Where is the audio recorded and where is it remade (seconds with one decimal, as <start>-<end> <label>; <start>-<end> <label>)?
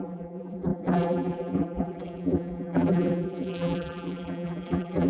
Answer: 0.0-5.1 remade